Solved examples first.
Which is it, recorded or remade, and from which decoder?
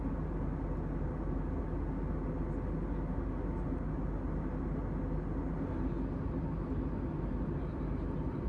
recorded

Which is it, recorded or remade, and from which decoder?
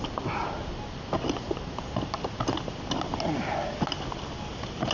recorded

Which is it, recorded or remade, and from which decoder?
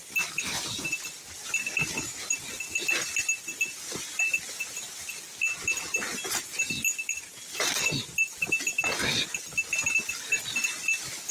recorded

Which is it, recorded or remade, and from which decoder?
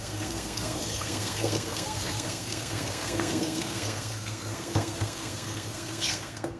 remade, codec, SNAC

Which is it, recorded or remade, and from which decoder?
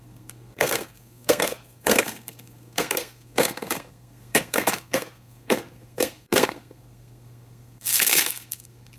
remade, codec, SNAC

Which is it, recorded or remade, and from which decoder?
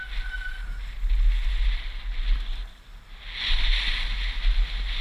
recorded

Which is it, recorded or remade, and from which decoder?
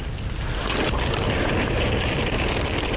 recorded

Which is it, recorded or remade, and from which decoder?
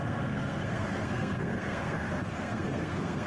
remade, codec, SNAC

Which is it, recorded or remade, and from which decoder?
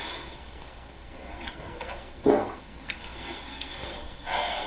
remade, codec, SNAC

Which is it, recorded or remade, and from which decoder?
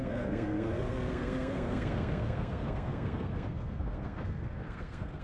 remade, codec, SNAC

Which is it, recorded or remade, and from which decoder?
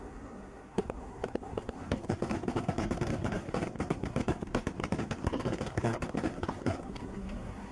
remade, codec, SNAC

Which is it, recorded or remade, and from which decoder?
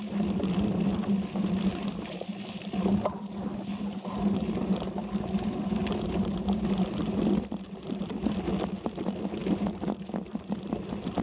recorded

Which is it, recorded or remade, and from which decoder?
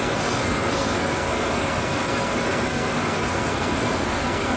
remade, codec, SNAC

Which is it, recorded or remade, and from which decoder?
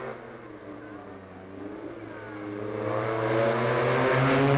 recorded